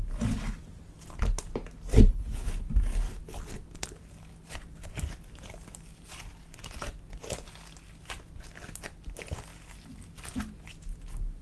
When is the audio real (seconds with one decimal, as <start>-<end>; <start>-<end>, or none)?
0.0-1.9; 2.5-11.4